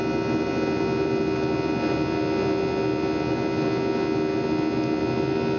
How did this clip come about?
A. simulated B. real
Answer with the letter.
B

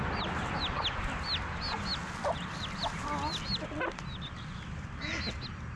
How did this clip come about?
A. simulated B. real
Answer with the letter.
B